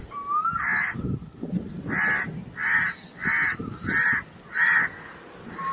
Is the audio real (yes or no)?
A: yes